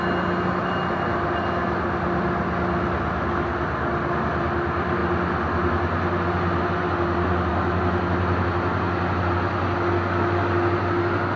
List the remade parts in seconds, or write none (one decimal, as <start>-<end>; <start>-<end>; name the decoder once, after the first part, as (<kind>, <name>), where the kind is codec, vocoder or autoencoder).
none